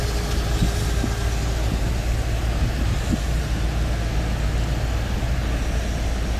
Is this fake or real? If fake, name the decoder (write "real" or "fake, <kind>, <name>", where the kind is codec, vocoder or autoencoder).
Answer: real